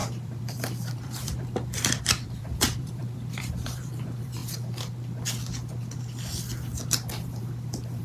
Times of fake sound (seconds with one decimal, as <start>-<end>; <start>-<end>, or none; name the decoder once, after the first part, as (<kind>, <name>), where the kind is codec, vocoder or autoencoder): 0.0-4.4 (vocoder, BigVGAN v2); 7.4-8.0